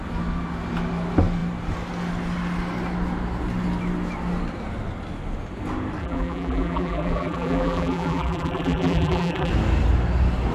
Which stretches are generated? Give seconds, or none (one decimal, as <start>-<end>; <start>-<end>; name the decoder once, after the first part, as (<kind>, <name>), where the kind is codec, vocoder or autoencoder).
6.0-9.5 (vocoder, BigVGAN v2)